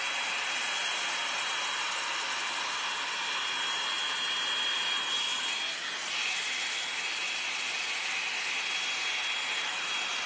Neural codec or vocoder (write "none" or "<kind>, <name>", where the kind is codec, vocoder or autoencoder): none